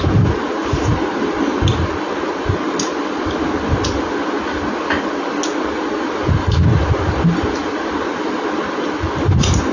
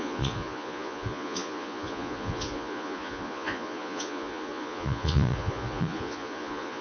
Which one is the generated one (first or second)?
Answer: second